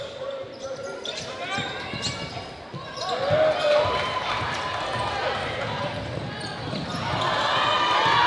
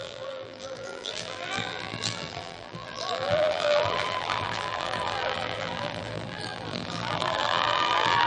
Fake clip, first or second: second